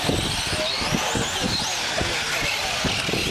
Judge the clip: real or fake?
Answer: real